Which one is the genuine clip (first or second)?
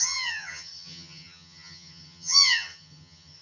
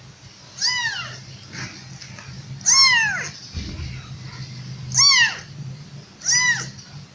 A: second